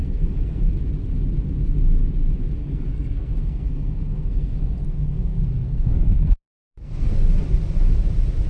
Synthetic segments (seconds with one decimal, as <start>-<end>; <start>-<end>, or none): 0.0-0.7; 2.6-7.3